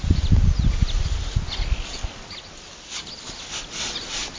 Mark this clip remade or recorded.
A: recorded